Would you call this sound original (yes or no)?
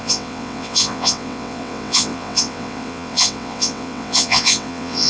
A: no